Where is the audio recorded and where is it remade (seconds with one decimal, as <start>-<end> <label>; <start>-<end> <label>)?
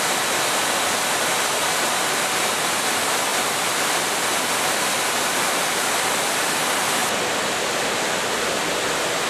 0.0-3.3 recorded; 3.3-4.3 remade; 4.3-7.0 recorded; 7.0-8.6 remade; 8.6-9.3 recorded